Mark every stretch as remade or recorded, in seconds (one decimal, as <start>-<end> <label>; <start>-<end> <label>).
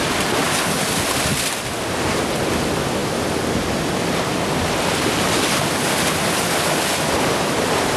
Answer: 0.0-8.0 recorded